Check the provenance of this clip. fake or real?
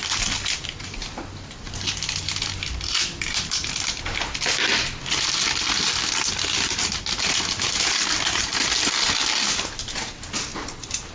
real